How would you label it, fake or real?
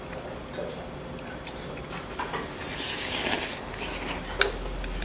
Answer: real